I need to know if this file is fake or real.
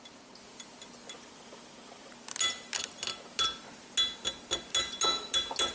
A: real